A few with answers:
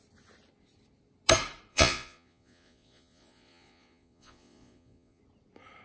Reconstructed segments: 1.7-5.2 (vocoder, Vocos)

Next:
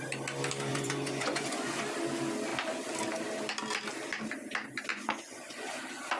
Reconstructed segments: 0.7-1.8 (vocoder, Vocos); 4.9-5.8

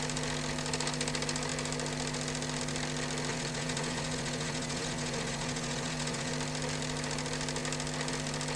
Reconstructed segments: 3.3-6.3 (vocoder, Vocos)